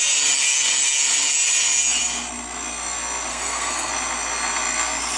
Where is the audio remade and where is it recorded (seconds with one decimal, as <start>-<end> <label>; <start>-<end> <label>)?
0.0-3.3 recorded; 3.3-3.9 remade; 3.9-5.2 recorded